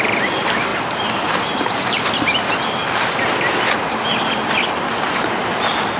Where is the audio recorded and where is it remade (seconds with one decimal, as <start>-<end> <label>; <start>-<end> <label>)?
0.0-0.7 recorded; 0.7-2.4 remade; 2.4-6.0 recorded